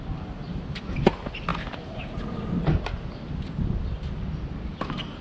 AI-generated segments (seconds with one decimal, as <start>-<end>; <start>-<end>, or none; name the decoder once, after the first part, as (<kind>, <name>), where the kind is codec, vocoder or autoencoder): none